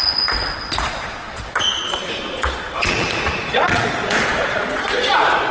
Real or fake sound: fake